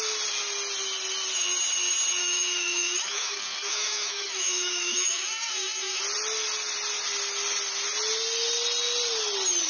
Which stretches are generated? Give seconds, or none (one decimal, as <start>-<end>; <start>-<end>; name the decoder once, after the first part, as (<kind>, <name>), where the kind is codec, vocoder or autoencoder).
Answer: 2.2-6.0 (autoencoder, DAC-VAE)